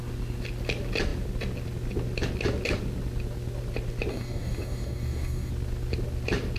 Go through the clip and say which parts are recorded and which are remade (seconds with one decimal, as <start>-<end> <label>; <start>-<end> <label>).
0.0-4.1 recorded; 4.1-5.5 remade; 5.5-6.6 recorded